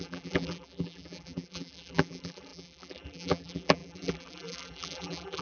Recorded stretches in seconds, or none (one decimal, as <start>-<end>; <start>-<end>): none